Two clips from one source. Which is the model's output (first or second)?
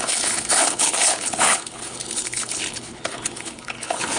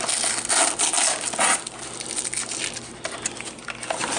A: first